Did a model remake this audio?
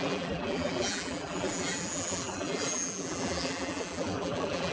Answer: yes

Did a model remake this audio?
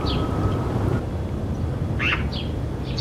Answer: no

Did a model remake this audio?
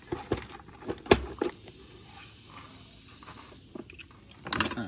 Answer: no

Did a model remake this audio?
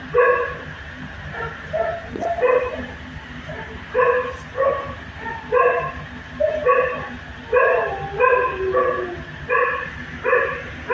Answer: yes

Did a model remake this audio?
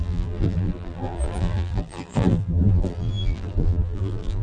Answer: yes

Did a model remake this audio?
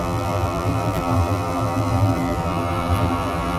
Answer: yes